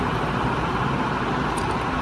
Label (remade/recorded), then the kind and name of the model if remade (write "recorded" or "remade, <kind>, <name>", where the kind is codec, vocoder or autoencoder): recorded